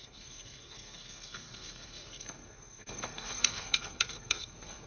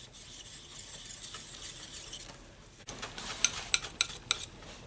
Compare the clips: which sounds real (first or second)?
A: second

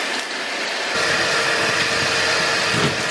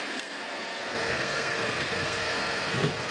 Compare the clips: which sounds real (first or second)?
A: first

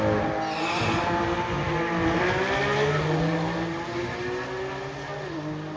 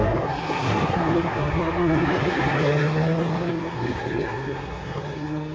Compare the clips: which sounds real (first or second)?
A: first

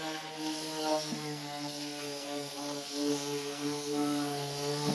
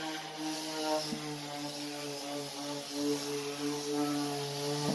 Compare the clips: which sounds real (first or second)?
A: second